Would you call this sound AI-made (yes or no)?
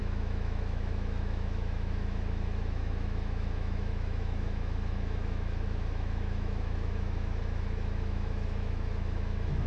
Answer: yes